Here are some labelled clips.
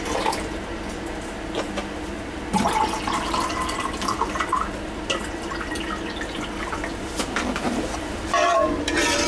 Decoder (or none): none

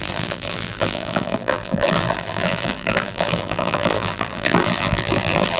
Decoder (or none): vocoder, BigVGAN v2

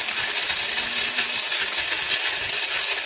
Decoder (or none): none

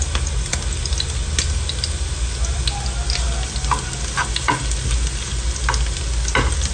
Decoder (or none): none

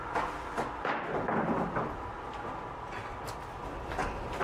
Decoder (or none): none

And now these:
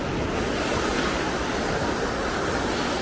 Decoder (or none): none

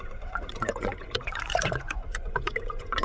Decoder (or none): vocoder, Vocos